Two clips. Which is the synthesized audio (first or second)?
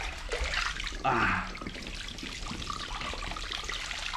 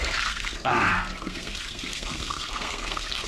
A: second